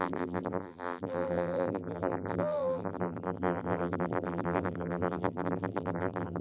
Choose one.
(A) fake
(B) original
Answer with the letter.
A